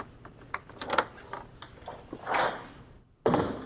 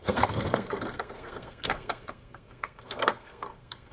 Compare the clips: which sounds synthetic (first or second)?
second